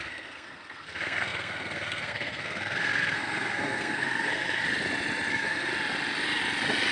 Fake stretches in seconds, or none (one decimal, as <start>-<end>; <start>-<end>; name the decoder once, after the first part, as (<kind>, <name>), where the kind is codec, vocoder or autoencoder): 0.0-4.6 (codec, SNAC); 5.3-5.7

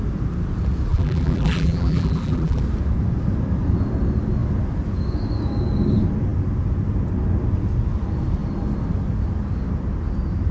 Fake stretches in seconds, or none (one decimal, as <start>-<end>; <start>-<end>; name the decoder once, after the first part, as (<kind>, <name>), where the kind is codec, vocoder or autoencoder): 0.9-2.6 (vocoder, BigVGAN v2)

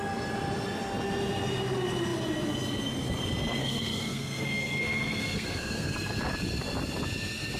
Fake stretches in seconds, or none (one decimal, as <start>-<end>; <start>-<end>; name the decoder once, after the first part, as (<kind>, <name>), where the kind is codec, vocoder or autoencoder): 3.6-6.2 (codec, SNAC)

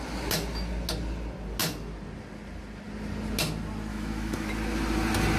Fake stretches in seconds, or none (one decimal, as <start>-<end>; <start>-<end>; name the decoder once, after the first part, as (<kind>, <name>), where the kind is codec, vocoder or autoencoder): 3.9-4.5 (autoencoder, DAC-VAE)

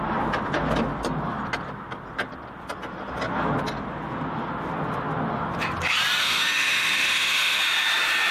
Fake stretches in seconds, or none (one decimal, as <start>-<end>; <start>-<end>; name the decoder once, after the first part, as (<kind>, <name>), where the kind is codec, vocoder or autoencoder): 6.2-7.6 (autoencoder, DAC-VAE)

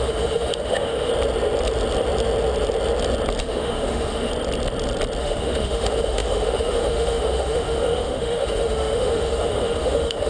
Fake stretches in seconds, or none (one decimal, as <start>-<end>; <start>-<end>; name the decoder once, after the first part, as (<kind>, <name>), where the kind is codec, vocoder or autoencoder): 0.0-1.1 (autoencoder, DAC-VAE); 3.4-4.3; 5.2-10.3

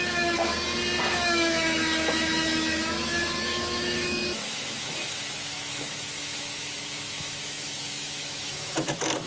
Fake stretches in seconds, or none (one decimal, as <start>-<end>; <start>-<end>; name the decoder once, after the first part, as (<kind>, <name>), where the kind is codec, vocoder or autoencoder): 0.0-0.5 (autoencoder, DAC-VAE); 1.1-9.3